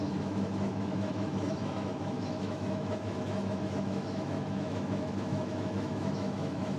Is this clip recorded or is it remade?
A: remade